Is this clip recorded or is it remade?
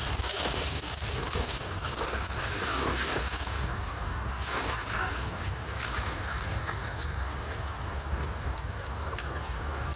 remade